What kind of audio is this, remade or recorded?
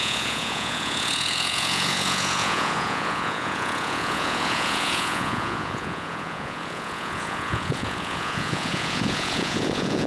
remade